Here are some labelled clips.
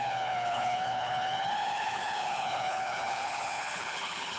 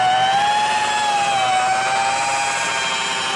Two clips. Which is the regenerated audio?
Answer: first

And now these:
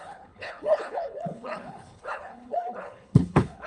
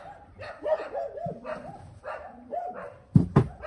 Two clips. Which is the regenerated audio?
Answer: first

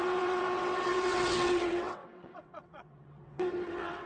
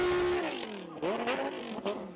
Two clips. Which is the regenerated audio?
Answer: first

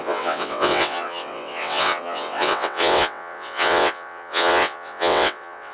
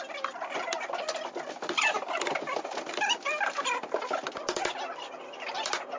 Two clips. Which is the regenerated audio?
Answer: first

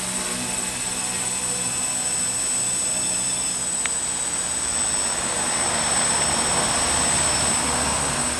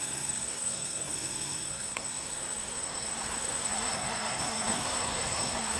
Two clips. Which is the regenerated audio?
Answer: second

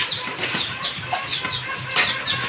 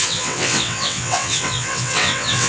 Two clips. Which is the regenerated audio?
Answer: second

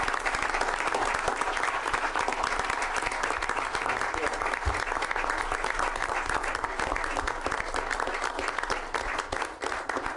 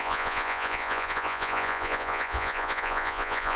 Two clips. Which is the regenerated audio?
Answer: second